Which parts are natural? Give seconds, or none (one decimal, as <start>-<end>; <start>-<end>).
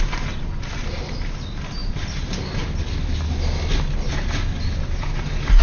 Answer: 0.0-5.6